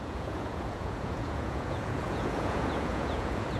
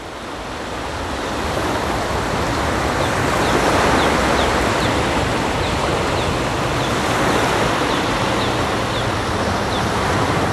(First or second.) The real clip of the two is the second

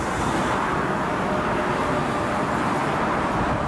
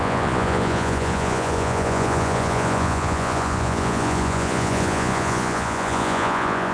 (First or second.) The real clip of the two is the first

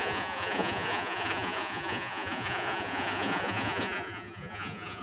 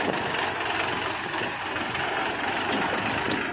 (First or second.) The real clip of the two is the second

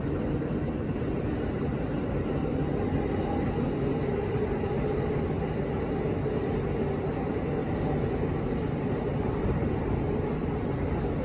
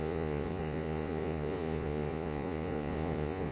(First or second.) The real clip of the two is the first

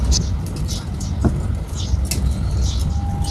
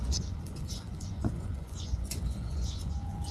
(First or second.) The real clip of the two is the first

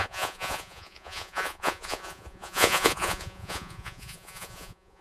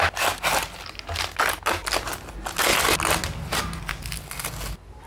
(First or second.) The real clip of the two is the second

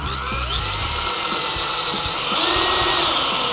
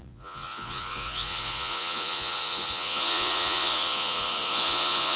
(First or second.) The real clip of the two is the first